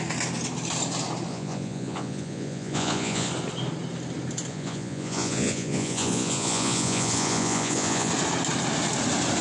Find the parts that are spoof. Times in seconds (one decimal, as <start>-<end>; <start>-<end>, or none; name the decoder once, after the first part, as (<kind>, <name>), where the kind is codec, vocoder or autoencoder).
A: 1.3-3.3 (vocoder, Vocos); 4.5-8.1